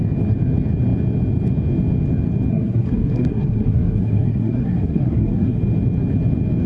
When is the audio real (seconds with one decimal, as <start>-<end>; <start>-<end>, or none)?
0.0-2.5; 5.6-6.7